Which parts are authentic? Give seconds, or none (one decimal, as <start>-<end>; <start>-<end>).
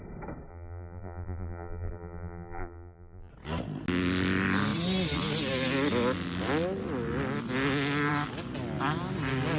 0.0-0.5; 3.3-9.6